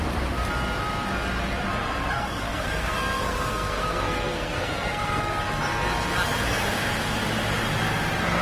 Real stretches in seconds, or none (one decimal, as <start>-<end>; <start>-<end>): 0.0-1.8; 5.4-8.4